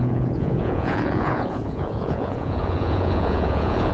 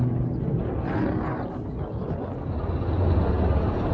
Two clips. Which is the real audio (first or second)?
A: second